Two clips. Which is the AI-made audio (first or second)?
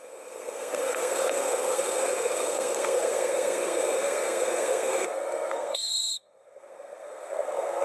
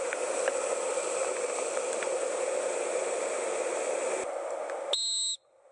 first